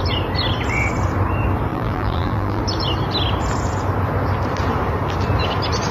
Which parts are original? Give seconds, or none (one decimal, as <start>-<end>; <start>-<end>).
0.0-1.7; 2.6-5.9

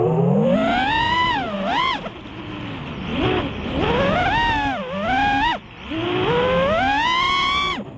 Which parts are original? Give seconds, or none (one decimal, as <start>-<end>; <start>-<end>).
0.0-8.0

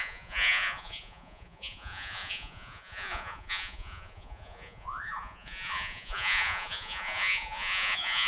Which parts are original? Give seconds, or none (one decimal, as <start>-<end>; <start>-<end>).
none

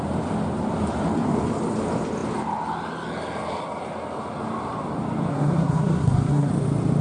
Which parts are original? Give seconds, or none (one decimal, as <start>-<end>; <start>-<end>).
0.0-5.3; 6.5-7.0

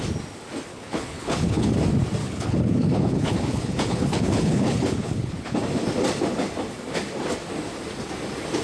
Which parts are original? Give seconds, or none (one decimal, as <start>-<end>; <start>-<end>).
0.0-0.7; 1.7-2.2; 5.6-8.6

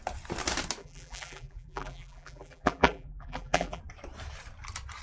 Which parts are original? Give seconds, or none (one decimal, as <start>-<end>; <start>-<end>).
0.0-0.8; 3.8-5.0